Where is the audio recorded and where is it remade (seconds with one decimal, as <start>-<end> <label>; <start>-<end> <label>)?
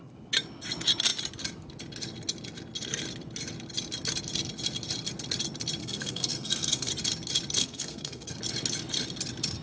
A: 0.0-5.8 recorded; 5.8-6.9 remade; 6.9-7.6 recorded; 7.6-8.4 remade; 8.4-9.6 recorded